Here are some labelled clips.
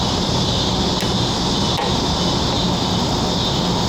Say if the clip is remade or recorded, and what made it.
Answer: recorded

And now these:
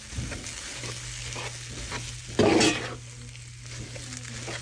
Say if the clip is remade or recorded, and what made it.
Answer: recorded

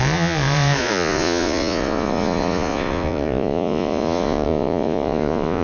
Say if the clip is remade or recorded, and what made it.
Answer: remade, vocoder, Vocos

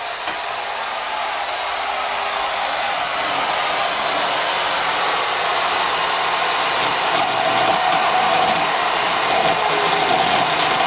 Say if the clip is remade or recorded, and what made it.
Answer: recorded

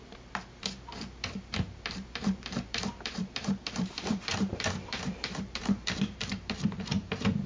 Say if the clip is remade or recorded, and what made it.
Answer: remade, vocoder, BigVGAN v2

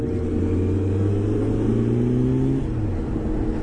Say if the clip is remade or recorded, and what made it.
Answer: recorded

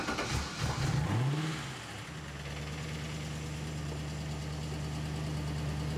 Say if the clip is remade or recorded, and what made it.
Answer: recorded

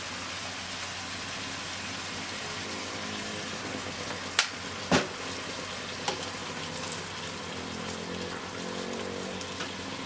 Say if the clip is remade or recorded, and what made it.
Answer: recorded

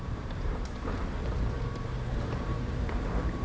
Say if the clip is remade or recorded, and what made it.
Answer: remade, vocoder, BigVGAN v2